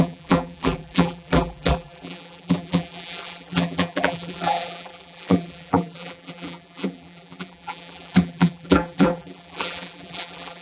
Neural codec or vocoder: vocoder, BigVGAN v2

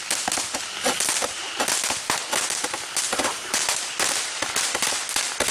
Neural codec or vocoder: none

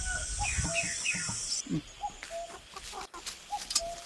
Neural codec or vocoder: none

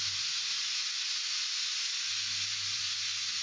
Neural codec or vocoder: none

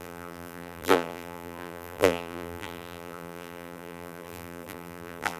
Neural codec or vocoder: vocoder, BigVGAN v2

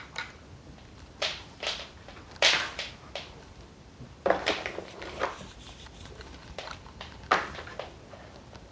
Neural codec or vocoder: vocoder, BigVGAN v2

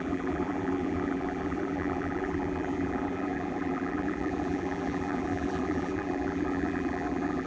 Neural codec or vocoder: vocoder, BigVGAN v2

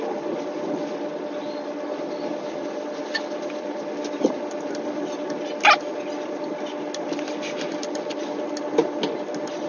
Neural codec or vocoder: none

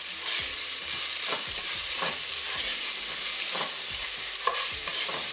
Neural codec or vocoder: vocoder, BigVGAN v2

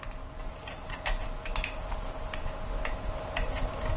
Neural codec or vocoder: none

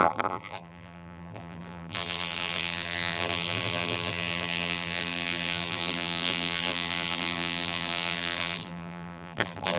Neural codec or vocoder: vocoder, BigVGAN v2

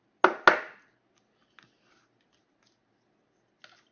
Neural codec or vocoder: none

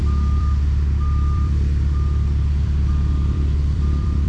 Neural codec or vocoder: vocoder, BigVGAN v2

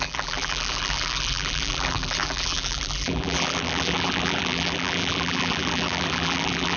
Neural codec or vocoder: vocoder, BigVGAN v2